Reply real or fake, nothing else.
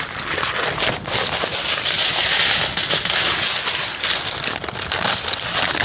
real